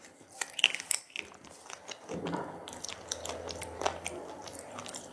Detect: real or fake fake